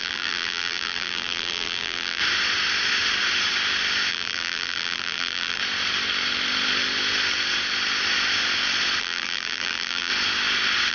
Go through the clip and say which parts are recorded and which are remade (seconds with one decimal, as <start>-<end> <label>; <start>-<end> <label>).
0.0-2.2 remade; 2.2-4.1 recorded; 4.1-5.6 remade; 5.6-9.0 recorded; 9.0-10.1 remade; 10.1-10.9 recorded